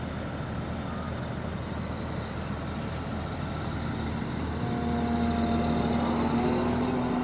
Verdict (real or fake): real